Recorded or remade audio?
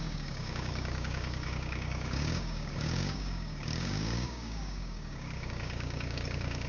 remade